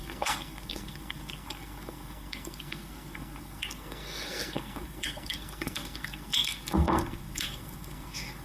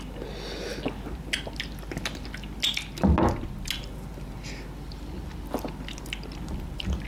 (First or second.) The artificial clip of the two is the first